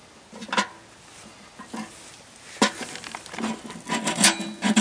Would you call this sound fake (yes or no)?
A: no